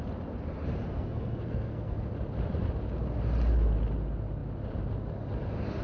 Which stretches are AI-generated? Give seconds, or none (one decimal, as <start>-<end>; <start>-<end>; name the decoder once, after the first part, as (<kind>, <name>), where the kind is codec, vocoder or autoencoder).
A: 0.9-2.1 (codec, SNAC)